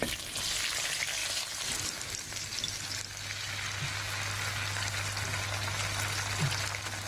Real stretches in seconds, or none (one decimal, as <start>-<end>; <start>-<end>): 0.0-7.1